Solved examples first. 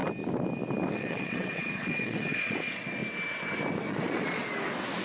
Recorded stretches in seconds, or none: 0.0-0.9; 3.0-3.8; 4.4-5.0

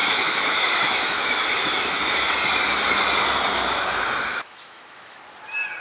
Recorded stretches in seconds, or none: 2.3-4.3; 5.2-5.8

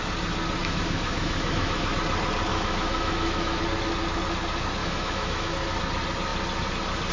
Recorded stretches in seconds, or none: 0.0-0.6; 1.9-2.5; 3.6-4.8; 5.5-7.1

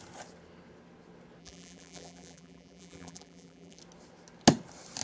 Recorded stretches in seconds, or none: 0.0-1.4; 3.8-5.0

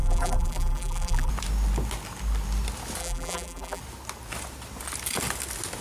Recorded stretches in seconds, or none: 1.3-3.0; 3.8-5.8

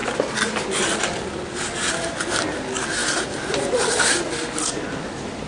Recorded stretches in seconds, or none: 0.0-3.0; 3.8-5.5